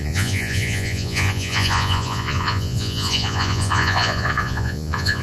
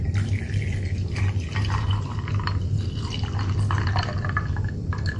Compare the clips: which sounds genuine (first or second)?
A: second